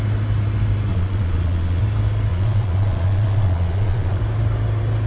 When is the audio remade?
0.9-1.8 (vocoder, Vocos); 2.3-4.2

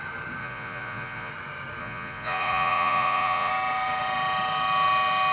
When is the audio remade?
0.4-1.3 (vocoder, Vocos); 1.8-3.5